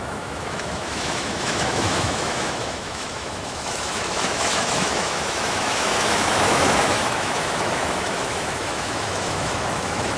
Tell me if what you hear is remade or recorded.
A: remade